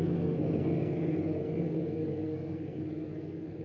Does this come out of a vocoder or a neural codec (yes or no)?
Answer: yes